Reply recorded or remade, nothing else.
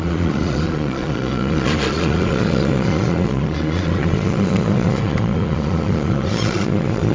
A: remade